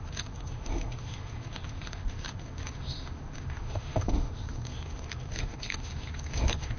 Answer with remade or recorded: remade